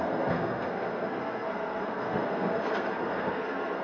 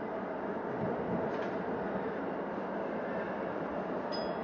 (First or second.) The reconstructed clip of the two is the first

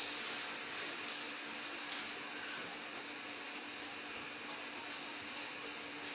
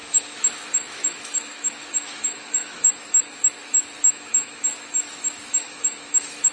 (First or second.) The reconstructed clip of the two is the second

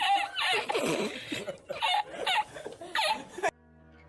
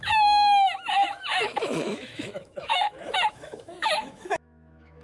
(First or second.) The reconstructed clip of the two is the second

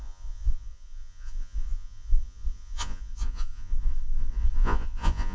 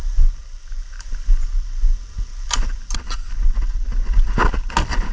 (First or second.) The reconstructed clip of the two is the first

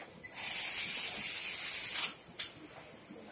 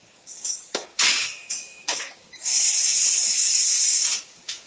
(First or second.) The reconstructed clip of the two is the second